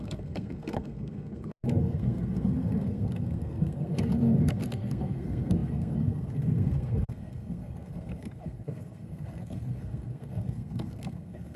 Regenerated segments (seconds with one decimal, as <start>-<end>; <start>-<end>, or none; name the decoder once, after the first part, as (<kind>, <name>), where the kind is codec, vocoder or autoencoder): 0.0-11.6 (codec, SNAC)